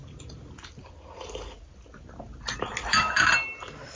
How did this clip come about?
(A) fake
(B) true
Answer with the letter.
B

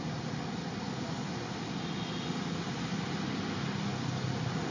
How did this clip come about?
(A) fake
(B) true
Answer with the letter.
B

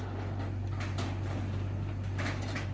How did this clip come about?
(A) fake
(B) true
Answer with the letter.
B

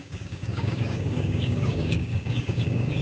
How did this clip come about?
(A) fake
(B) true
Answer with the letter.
A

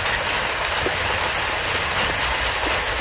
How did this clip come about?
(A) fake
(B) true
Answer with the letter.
B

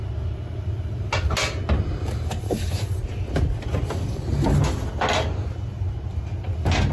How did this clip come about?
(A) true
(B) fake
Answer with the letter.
A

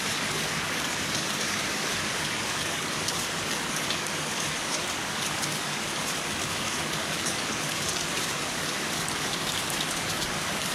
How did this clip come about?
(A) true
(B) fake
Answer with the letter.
B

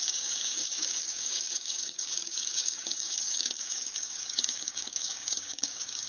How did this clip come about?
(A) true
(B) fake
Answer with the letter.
B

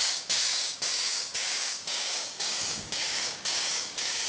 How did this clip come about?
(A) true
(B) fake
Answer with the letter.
B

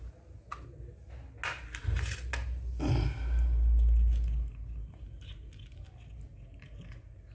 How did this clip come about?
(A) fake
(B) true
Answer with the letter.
B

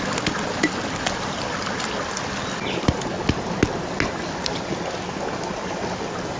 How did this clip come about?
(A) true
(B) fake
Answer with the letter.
A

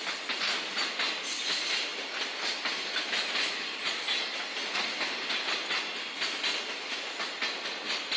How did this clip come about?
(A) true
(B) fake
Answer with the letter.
A